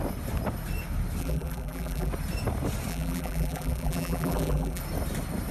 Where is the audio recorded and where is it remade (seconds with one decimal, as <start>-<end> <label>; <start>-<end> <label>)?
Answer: 0.0-1.2 recorded; 1.2-2.1 remade; 2.1-2.9 recorded; 2.9-4.8 remade; 4.8-5.5 recorded